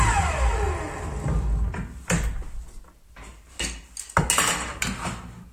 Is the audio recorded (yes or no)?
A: yes